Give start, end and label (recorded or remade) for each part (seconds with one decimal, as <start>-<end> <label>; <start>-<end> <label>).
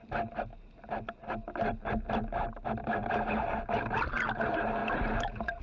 0.0-5.6 recorded